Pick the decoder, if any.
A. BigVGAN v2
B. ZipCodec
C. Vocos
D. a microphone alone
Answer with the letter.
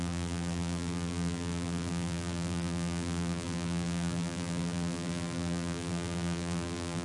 A